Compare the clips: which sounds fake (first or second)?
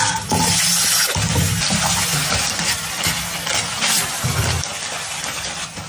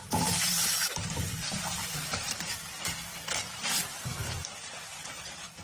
second